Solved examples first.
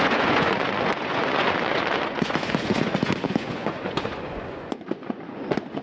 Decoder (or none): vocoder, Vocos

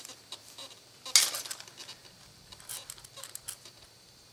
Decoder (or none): none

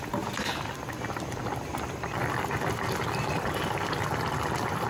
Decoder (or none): none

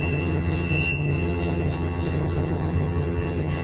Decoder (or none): vocoder, HiFi-GAN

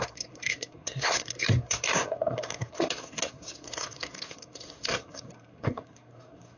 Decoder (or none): codec, SNAC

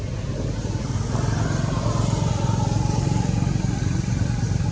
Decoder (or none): none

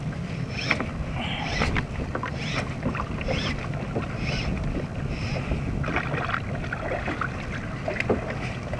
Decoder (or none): none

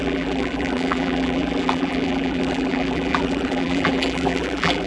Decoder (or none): vocoder, BigVGAN v2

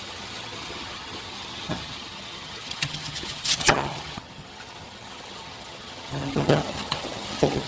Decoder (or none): vocoder, HiFi-GAN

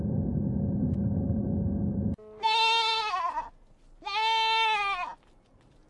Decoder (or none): none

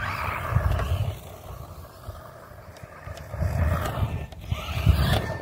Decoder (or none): none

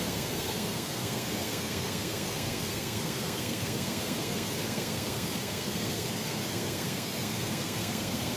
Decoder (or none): codec, SNAC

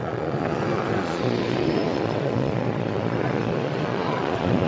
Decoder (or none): vocoder, Vocos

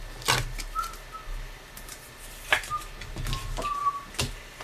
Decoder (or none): none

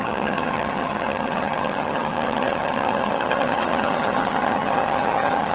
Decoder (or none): vocoder, HiFi-GAN